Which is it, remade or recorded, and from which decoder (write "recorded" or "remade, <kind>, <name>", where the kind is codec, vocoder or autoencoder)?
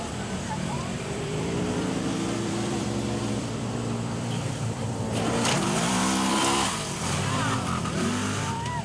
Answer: remade, vocoder, BigVGAN v2